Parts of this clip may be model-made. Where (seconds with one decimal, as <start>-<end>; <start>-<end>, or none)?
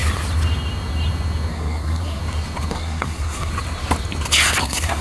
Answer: 1.5-2.2; 2.7-3.5; 4.6-5.0